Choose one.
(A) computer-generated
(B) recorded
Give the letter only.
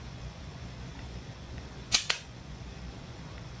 A